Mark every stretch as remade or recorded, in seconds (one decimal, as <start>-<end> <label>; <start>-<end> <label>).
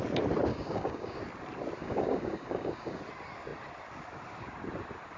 0.0-0.5 recorded; 0.5-1.2 remade; 1.2-1.8 recorded; 1.8-3.0 remade; 3.0-5.2 recorded